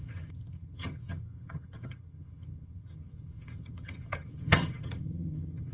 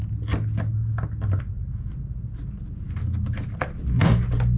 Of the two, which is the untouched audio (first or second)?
second